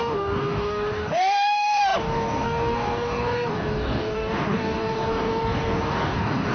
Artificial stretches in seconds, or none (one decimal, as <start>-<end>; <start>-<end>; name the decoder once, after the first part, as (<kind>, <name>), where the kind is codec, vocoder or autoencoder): 0.0-6.5 (codec, DAC)